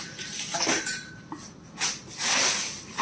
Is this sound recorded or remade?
recorded